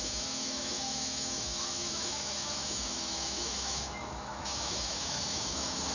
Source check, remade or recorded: remade